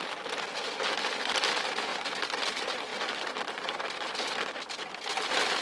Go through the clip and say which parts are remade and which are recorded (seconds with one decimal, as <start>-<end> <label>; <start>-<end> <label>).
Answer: 0.0-5.6 recorded